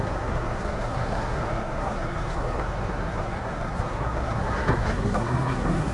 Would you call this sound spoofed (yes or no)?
yes